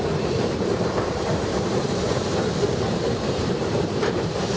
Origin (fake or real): fake